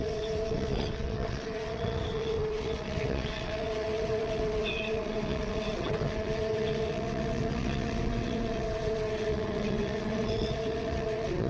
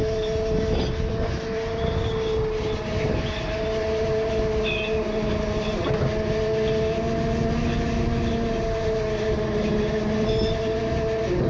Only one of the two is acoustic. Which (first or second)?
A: second